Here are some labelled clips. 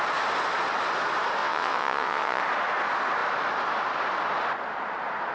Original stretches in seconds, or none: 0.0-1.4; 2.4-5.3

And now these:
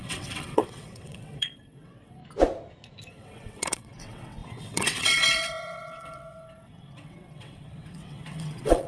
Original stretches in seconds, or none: 2.2-3.1